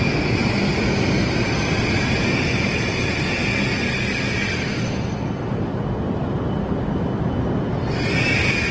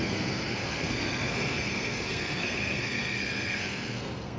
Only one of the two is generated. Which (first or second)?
second